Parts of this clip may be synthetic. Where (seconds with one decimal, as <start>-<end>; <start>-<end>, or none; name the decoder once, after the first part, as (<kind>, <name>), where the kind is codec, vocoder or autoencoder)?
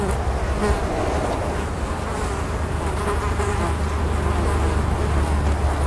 none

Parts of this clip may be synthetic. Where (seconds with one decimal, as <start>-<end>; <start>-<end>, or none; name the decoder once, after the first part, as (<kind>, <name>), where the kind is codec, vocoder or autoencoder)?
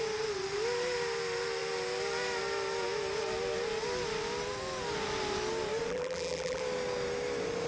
5.9-6.6 (vocoder, BigVGAN v2)